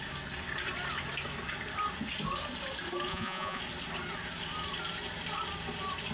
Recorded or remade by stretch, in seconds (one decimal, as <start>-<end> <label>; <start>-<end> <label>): 0.0-3.1 recorded; 3.1-3.6 remade; 3.6-6.1 recorded